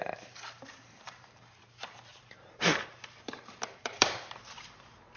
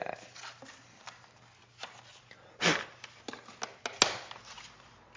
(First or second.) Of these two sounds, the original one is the second